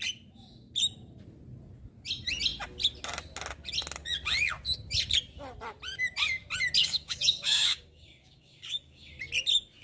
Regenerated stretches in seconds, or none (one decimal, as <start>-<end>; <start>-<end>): 6.8-9.1